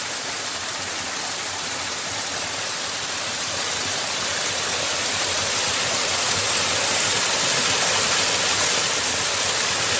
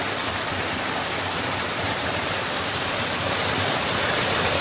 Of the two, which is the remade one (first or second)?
second